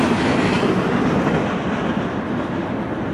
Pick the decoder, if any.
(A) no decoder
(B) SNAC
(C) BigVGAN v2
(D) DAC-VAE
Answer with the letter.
A